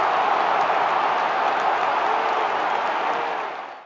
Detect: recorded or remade recorded